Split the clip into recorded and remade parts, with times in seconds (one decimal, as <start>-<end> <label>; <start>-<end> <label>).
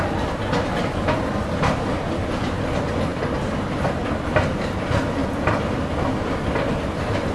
0.0-3.1 remade; 3.1-3.9 recorded; 3.9-7.3 remade